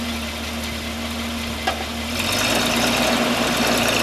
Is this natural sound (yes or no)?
yes